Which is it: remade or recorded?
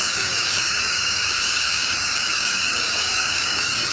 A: remade